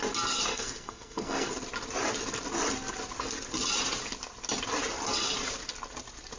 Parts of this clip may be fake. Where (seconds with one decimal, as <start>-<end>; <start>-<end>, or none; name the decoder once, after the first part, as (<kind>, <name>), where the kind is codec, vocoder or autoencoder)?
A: 0.5-1.5 (codec, SNAC)